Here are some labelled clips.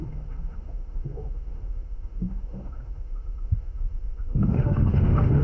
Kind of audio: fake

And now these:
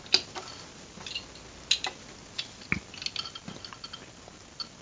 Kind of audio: real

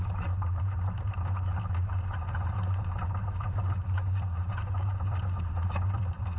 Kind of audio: fake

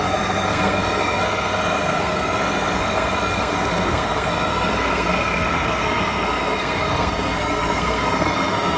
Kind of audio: fake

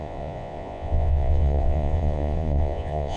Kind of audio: fake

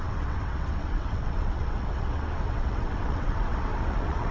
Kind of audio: fake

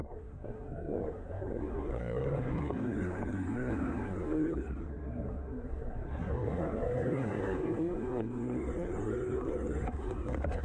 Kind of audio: fake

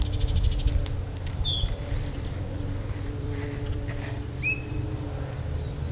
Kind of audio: real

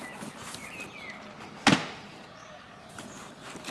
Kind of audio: real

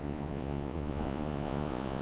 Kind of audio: fake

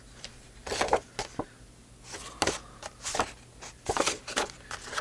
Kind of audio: real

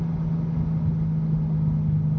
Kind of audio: real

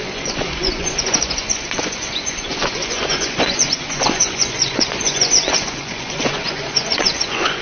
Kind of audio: fake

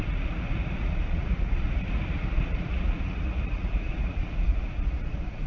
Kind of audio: fake